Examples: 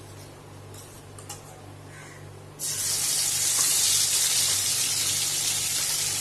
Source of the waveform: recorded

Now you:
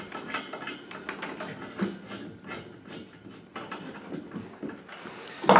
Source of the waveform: recorded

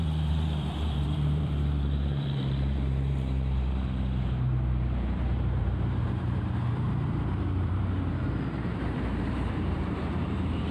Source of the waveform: remade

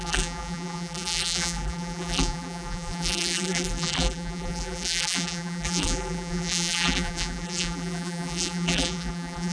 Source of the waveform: remade